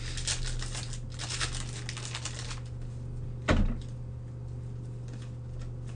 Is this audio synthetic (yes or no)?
no